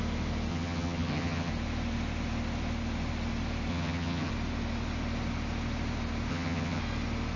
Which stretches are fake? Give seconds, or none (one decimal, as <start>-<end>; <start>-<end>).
0.5-1.5; 3.7-4.3; 6.3-6.8

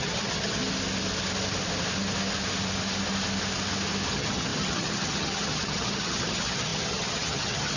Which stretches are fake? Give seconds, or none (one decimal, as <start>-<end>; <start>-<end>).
0.0-0.6; 4.1-7.8

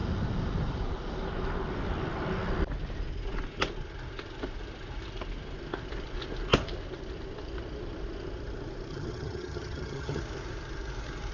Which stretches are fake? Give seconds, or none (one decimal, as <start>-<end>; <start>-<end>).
8.9-10.2